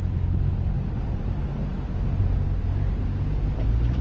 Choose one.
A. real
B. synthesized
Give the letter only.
A